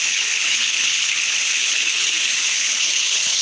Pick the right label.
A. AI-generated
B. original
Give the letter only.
A